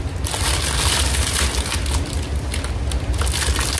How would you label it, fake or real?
real